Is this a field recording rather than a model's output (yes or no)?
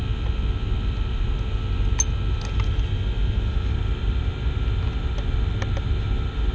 yes